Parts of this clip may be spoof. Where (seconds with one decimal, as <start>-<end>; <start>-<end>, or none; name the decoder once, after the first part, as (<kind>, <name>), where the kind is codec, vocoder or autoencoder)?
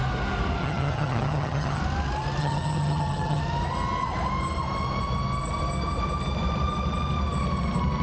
0.6-1.8 (vocoder, HiFi-GAN); 2.4-3.4